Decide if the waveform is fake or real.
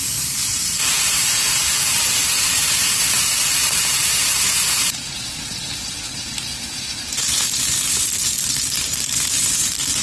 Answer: fake